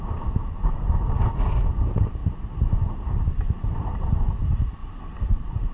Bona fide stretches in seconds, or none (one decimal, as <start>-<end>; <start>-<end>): 4.8-5.3